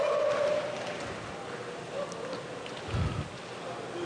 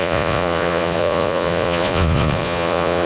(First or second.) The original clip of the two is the first